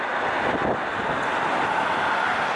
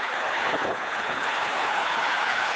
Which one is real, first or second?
first